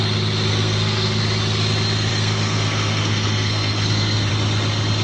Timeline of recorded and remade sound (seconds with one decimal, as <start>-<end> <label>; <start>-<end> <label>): 0.0-0.5 recorded; 0.5-1.2 remade; 1.2-2.1 recorded; 2.1-4.3 remade; 4.3-5.0 recorded